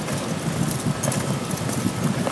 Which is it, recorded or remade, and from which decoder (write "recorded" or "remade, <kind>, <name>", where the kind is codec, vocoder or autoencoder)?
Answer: recorded